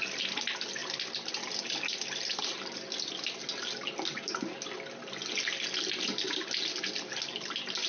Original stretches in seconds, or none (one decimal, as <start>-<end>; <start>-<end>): 0.0-7.9